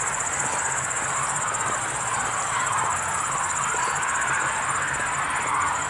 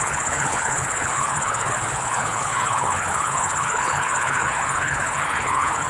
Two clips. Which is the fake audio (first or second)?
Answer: second